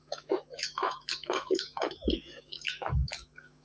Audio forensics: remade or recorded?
remade